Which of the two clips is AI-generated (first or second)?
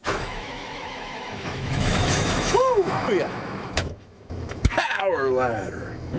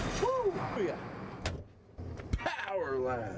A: first